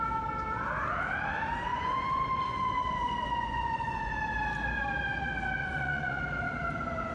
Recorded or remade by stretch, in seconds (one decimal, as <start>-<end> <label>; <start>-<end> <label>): 0.0-1.7 recorded; 1.7-4.1 remade; 4.1-5.6 recorded; 5.6-6.2 remade; 6.2-7.1 recorded